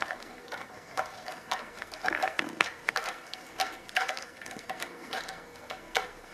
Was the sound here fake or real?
fake